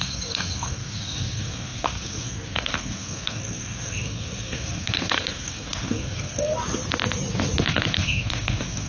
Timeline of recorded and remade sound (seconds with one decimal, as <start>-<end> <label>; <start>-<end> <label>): 0.0-6.5 remade; 6.5-7.6 recorded; 7.6-8.9 remade